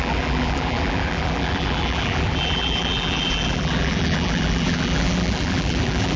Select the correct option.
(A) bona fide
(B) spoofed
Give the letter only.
B